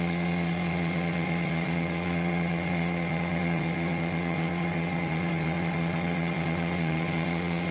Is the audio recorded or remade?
remade